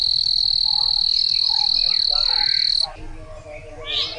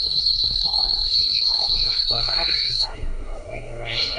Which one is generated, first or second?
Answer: second